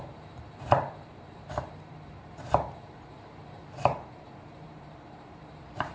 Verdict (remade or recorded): remade